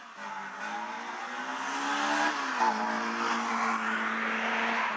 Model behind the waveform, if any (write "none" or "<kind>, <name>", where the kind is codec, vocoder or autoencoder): none